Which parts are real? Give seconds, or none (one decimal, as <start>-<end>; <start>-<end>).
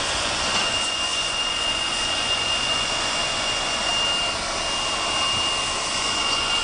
3.9-5.9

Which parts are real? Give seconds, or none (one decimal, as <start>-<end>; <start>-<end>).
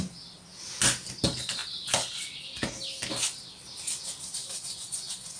0.0-4.4